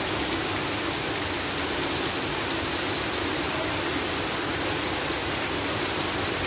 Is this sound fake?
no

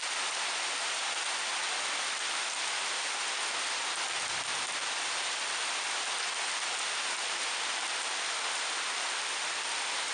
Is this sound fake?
no